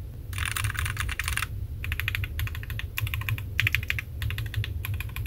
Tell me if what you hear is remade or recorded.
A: recorded